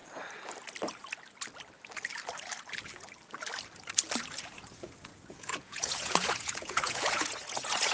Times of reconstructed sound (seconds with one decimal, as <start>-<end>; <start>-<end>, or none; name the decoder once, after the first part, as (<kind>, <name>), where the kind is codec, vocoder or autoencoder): 4.4-7.9 (vocoder, Vocos)